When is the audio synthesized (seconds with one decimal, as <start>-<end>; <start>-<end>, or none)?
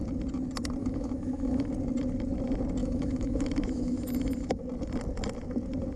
0.8-1.7; 2.8-4.6